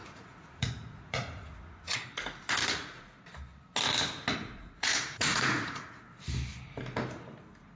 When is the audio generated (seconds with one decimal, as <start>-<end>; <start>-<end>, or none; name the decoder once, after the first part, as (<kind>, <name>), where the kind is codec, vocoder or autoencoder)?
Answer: 0.0-2.0 (vocoder, Vocos); 2.6-3.2; 4.4-6.1